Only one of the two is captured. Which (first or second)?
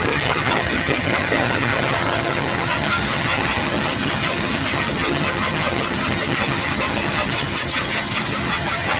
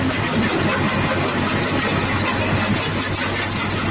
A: second